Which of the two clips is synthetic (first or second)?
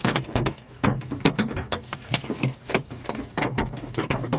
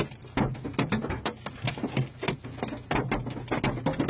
first